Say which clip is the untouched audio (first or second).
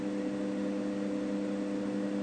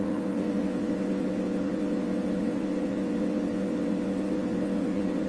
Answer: first